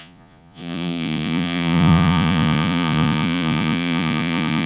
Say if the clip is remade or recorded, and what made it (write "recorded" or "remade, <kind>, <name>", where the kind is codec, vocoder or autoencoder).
remade, vocoder, Vocos